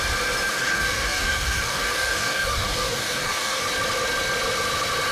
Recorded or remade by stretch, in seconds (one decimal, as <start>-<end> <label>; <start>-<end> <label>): 0.0-0.5 recorded; 0.5-3.6 remade; 3.6-5.1 recorded